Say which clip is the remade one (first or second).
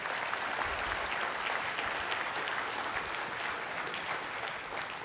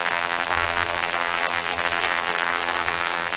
second